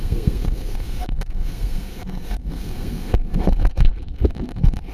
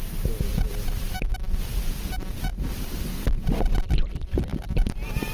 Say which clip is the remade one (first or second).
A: first